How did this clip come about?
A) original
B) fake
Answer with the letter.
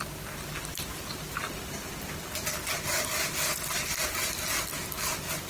A